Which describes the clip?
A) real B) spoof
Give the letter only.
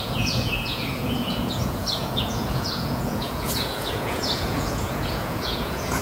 B